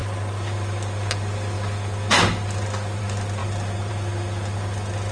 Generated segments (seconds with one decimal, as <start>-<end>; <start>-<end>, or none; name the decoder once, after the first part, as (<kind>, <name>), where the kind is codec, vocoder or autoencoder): none